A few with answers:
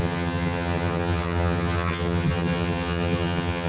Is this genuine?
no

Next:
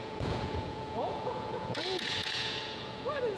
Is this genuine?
no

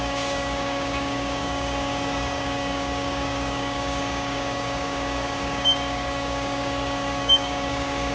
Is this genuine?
no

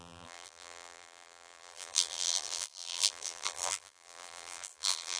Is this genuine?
no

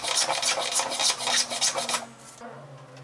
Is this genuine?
yes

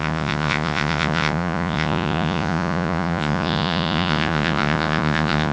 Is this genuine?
no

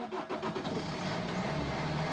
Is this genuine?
yes